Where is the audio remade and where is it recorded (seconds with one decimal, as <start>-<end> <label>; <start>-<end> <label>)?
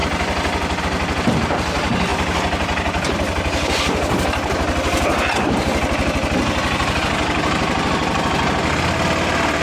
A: 0.0-9.6 recorded